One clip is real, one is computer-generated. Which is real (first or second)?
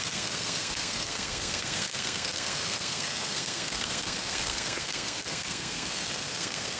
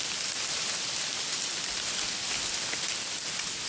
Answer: second